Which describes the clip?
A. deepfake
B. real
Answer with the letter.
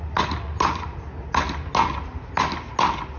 B